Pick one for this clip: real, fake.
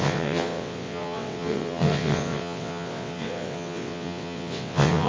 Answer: fake